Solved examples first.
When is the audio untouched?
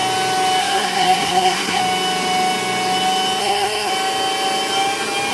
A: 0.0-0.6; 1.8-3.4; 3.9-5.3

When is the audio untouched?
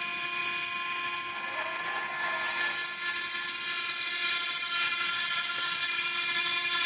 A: 0.0-6.9